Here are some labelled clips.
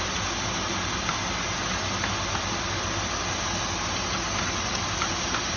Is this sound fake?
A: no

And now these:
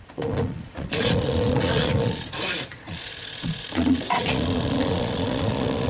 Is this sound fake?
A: yes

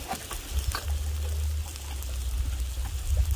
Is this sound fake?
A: no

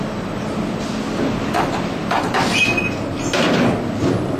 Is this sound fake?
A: no